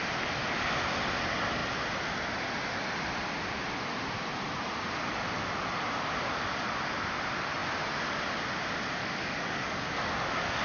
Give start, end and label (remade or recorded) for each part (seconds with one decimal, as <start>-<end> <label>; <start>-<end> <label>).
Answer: 0.0-9.0 recorded; 9.0-10.6 remade